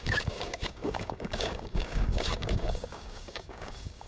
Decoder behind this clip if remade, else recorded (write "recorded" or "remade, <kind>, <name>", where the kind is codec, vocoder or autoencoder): remade, codec, DAC